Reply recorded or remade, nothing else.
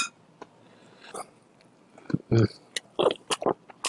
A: recorded